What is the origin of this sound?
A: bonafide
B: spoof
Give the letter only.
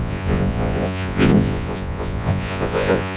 B